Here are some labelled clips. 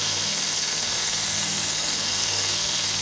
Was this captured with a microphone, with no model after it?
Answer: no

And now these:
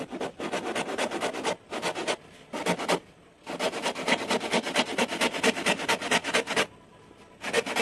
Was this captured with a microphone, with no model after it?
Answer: yes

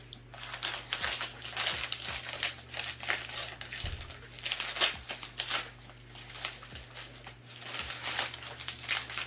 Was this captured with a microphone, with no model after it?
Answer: yes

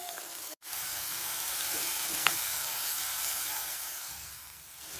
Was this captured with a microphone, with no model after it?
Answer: no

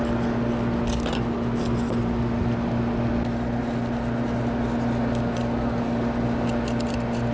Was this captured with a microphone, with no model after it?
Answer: yes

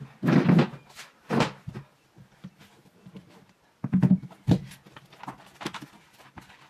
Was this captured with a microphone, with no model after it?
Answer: yes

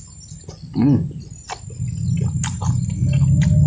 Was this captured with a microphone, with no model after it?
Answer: yes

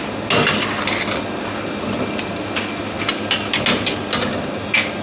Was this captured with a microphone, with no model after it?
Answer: yes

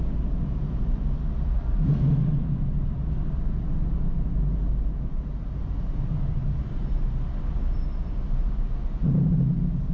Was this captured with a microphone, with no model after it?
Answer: yes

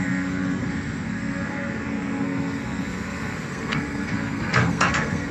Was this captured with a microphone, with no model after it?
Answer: no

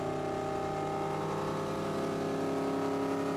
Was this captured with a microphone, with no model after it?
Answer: yes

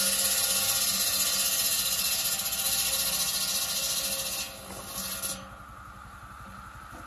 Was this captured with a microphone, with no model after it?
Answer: yes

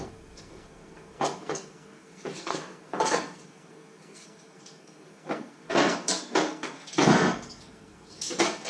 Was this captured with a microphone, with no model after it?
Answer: no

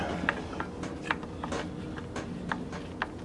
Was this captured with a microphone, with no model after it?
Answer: yes